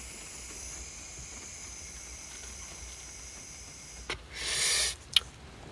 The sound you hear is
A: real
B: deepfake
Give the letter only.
A